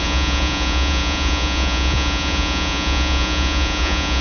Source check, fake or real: fake